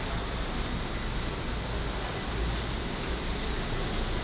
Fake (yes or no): no